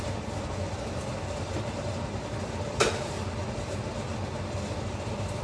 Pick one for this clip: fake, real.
real